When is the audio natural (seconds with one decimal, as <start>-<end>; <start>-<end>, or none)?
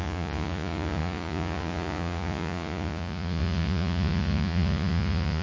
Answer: none